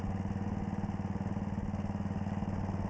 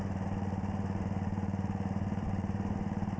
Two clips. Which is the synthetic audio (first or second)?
second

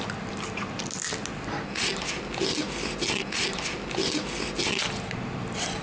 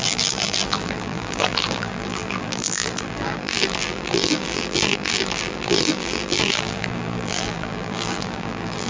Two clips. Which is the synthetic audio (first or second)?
second